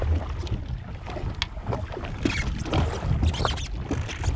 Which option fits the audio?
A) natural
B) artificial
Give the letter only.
A